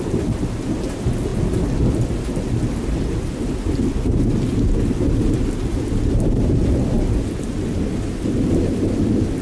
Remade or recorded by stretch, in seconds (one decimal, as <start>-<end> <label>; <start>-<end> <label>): 0.0-9.4 recorded